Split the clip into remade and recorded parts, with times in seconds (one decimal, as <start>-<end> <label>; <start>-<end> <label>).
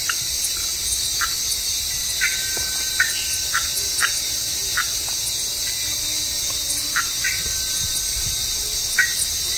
0.0-0.6 remade; 0.6-2.0 recorded; 2.0-5.1 remade; 5.1-9.6 recorded